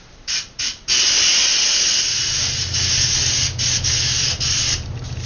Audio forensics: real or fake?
real